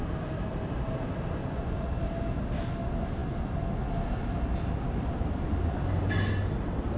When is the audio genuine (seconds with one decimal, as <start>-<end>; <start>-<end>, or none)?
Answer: 0.0-1.4; 2.0-7.0